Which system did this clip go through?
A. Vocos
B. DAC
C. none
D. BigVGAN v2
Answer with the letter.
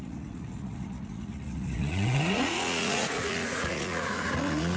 A